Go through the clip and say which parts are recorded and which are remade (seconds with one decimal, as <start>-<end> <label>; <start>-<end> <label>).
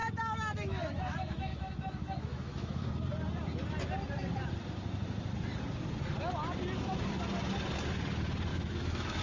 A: 0.0-2.9 remade; 2.9-8.5 recorded; 8.5-9.2 remade